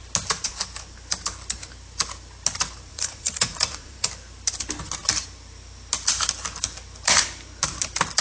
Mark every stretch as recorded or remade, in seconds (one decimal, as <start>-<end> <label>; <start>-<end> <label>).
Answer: 0.0-2.9 recorded; 2.9-4.1 remade; 4.1-8.2 recorded